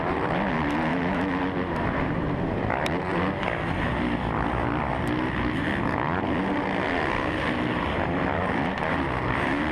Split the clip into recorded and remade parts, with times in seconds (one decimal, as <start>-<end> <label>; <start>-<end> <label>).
0.0-0.9 recorded; 0.9-1.4 remade; 1.4-9.7 recorded

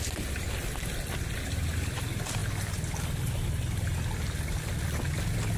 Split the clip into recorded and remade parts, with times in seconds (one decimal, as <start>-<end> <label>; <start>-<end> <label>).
0.0-5.6 recorded